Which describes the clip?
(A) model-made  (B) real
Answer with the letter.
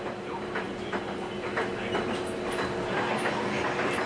B